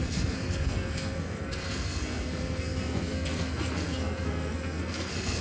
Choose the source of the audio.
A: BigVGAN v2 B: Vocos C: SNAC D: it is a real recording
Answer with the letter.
C